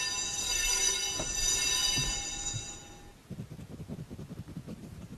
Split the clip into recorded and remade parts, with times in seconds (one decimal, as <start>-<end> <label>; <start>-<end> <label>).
0.0-0.4 recorded; 0.4-0.9 remade; 0.9-5.2 recorded